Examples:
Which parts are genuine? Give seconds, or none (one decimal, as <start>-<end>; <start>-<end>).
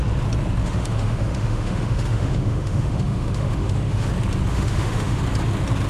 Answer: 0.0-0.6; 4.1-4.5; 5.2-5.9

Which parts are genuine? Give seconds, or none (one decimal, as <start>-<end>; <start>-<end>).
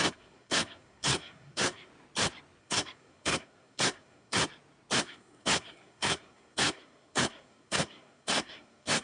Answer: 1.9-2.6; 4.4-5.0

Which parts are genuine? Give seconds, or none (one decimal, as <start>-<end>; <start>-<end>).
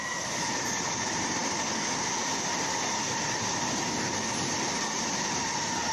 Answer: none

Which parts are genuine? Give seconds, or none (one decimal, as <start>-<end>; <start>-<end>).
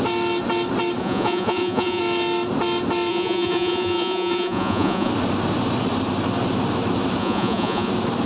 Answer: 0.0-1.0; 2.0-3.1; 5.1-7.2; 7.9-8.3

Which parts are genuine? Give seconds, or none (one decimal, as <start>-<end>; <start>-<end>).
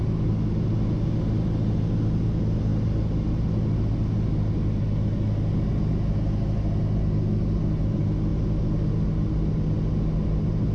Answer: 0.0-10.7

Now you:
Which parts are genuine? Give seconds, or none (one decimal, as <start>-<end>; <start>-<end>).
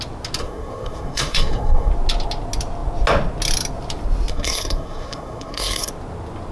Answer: 0.0-0.4; 1.9-4.3; 5.9-6.5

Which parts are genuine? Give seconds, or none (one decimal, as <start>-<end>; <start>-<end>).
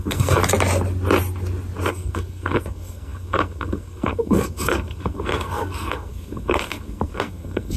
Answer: 0.4-1.9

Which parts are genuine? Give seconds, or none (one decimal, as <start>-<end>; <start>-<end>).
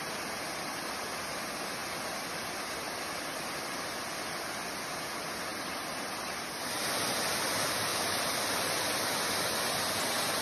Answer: 0.0-7.9; 8.4-10.4